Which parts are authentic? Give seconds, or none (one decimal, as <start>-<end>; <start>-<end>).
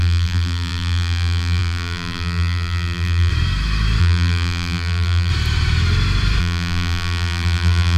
3.3-4.0; 5.3-6.4